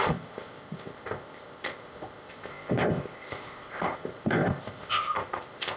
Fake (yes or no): yes